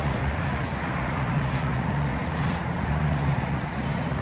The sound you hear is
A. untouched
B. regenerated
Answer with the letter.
B